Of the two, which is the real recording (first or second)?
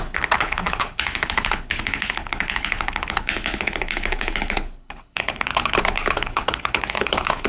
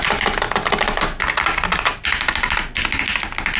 second